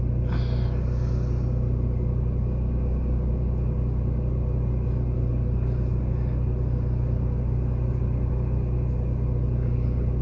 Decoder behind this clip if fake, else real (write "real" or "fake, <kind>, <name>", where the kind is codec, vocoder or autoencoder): real